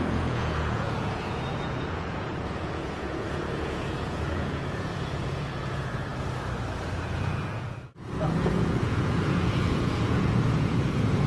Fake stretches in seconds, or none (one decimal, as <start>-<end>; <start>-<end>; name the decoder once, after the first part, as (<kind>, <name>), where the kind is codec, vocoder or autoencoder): 0.0-6.1 (vocoder, Vocos); 7.0-11.3